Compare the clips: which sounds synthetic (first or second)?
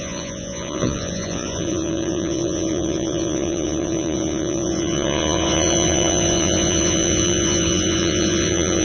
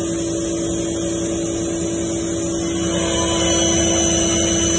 first